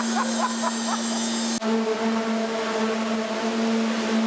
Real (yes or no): yes